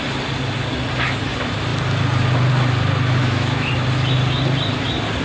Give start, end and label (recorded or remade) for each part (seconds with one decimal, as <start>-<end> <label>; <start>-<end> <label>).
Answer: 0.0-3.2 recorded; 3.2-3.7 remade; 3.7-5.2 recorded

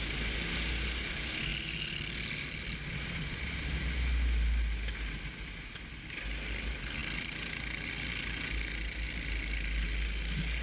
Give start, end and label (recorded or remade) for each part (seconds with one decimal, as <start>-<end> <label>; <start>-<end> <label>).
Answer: 0.0-10.6 recorded

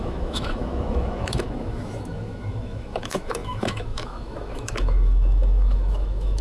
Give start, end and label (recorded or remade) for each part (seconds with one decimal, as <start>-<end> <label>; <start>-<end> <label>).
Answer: 0.0-6.4 remade

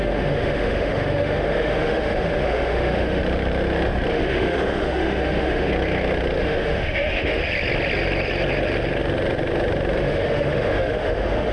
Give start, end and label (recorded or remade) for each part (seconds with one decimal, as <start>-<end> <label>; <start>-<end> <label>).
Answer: 0.0-3.2 remade; 3.2-4.1 recorded; 4.1-5.7 remade; 5.7-6.4 recorded; 6.4-7.4 remade; 7.4-10.0 recorded; 10.0-11.5 remade